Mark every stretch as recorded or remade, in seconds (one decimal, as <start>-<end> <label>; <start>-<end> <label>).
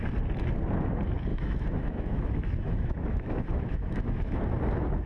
0.0-1.3 recorded; 1.3-4.4 remade; 4.4-5.1 recorded